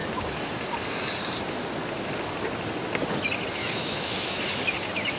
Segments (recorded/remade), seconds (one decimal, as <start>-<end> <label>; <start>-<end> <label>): 0.0-3.6 recorded; 3.6-4.4 remade; 4.4-5.2 recorded